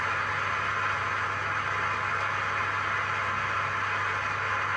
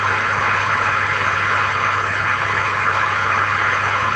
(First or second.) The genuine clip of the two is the first